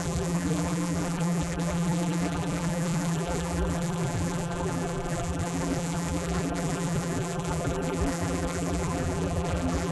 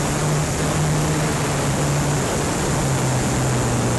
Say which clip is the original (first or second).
second